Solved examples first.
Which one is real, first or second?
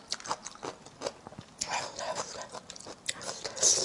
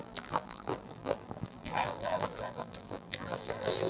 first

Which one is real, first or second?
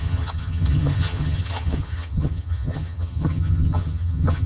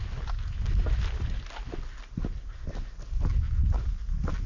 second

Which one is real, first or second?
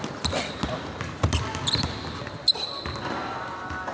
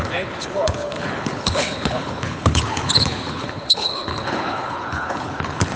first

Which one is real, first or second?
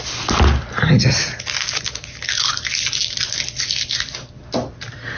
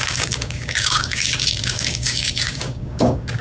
first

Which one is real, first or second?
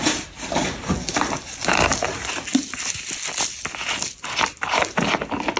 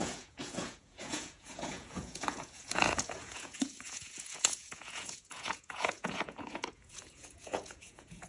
first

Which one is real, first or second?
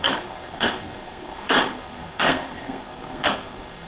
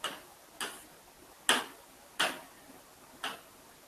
second